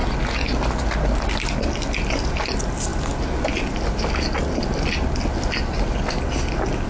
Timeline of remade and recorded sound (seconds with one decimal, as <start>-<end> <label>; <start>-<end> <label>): 0.0-6.9 recorded